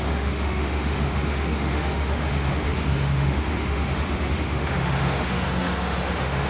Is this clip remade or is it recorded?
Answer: remade